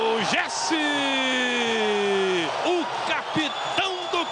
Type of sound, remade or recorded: recorded